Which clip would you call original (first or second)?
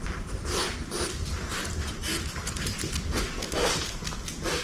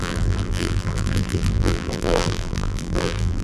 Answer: first